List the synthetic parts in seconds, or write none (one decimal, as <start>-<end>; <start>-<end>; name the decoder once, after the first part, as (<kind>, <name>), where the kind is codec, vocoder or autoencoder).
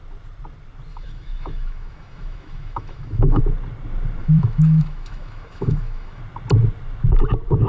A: 0.9-3.4 (autoencoder, DAC-VAE); 4.2-6.2